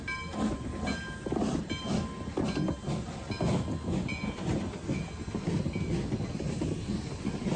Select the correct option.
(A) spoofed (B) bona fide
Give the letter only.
B